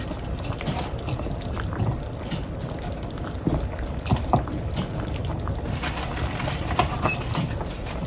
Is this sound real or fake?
real